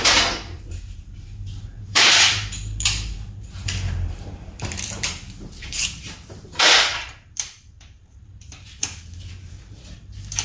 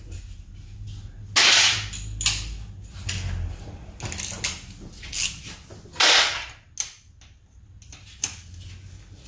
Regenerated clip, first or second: first